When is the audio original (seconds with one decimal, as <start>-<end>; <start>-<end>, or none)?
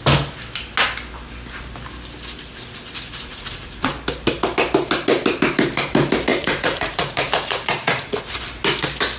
0.0-3.3; 3.9-6.3; 8.4-9.2